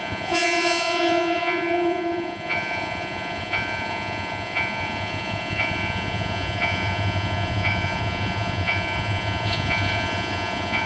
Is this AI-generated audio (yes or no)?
yes